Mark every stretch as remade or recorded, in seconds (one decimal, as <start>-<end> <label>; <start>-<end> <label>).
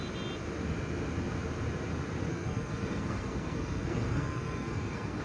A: 0.0-2.3 recorded; 2.3-5.2 remade